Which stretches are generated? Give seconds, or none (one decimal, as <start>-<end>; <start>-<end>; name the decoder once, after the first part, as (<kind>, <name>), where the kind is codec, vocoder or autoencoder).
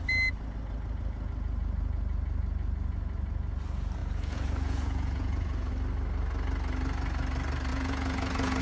4.0-5.7 (vocoder, Vocos); 7.7-8.6